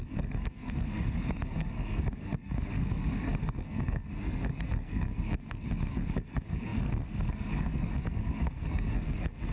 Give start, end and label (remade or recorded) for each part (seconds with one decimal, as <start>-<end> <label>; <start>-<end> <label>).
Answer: 0.0-9.5 remade